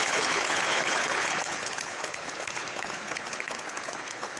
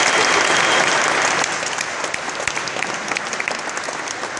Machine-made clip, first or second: first